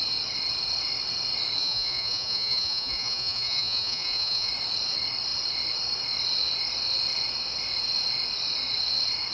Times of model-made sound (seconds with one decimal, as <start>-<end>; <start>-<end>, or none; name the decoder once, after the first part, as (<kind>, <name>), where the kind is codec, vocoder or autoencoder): 1.6-4.5 (vocoder, Vocos)